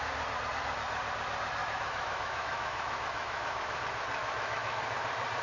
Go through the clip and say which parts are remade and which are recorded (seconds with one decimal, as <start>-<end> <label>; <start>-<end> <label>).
0.0-1.6 recorded; 1.6-3.8 remade; 3.8-4.2 recorded; 4.2-4.8 remade; 4.8-5.4 recorded